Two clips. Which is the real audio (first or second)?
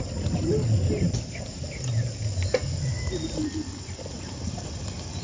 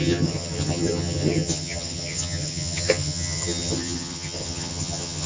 first